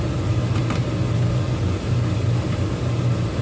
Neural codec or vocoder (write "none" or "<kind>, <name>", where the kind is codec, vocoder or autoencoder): none